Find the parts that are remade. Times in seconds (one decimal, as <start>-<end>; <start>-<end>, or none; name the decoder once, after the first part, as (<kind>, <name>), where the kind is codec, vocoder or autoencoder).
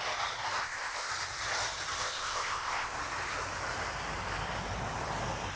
0.6-1.1 (codec, ZipCodec); 2.0-3.0